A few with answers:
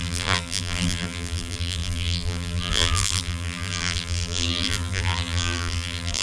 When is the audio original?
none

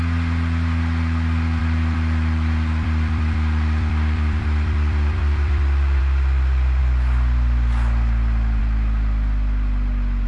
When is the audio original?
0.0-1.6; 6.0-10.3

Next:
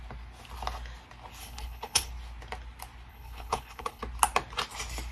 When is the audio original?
0.0-1.4; 2.1-3.1; 4.0-5.1

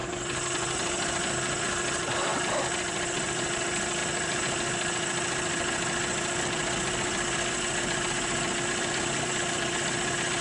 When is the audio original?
0.0-10.4

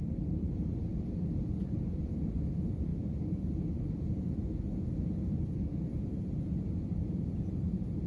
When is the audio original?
0.0-0.8; 2.2-2.9; 4.2-5.9

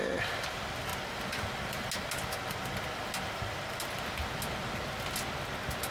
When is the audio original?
0.0-5.9

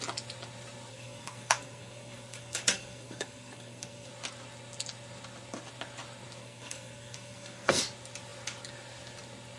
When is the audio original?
0.0-0.9; 4.1-6.4; 7.8-9.6

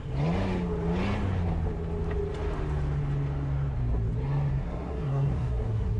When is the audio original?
0.0-4.5